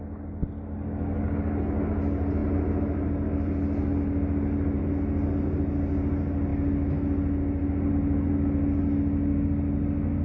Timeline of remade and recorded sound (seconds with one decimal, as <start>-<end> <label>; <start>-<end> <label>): 0.0-10.2 recorded